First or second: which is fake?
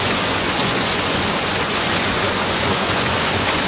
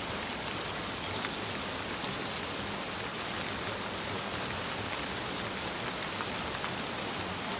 first